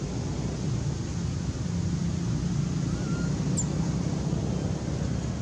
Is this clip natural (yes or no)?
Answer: yes